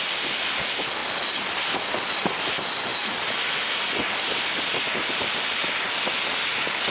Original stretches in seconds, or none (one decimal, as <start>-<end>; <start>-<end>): 0.0-1.0; 2.3-6.9